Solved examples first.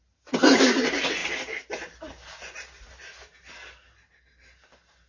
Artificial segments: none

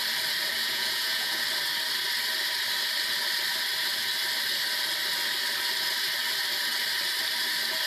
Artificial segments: 0.6-1.4 (vocoder, Vocos)

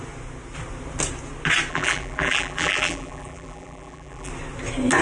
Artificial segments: 1.7-4.3 (vocoder, BigVGAN v2)

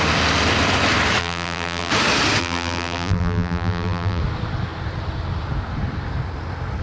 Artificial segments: 1.2-1.9 (vocoder, BigVGAN v2); 2.4-4.2

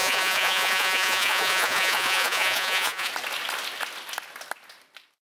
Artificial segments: 0.0-3.1 (vocoder, Vocos)